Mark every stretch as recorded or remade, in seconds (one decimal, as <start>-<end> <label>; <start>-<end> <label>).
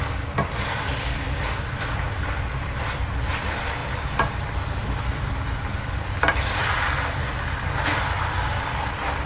0.0-9.3 remade